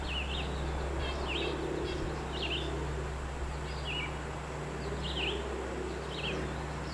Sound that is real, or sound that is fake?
real